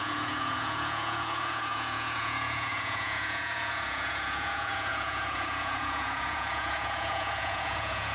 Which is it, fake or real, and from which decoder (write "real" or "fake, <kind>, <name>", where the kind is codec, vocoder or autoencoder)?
fake, vocoder, Vocos